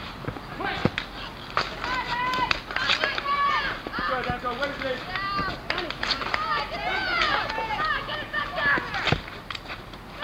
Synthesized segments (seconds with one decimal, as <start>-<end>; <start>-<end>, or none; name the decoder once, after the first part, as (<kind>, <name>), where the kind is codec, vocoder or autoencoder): 6.8-8.4 (vocoder, Vocos)